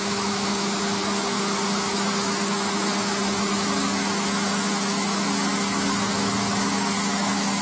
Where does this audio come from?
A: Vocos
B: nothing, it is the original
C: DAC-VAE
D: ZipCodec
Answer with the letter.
C